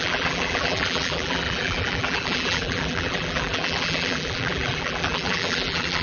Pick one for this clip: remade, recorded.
remade